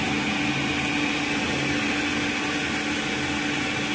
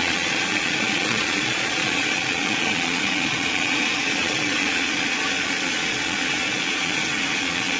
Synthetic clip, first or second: second